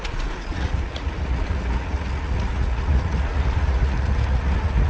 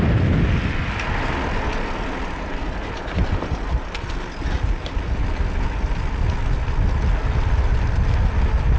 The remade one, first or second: first